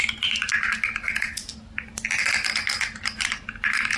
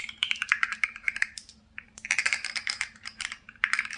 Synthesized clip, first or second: second